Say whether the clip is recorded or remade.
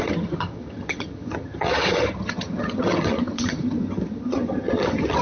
remade